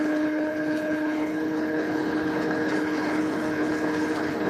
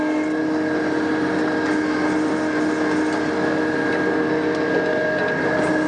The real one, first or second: second